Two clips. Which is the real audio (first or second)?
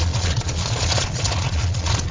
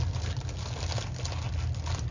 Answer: second